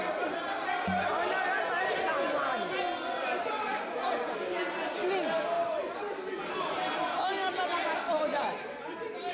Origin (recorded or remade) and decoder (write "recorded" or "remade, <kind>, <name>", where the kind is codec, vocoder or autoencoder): recorded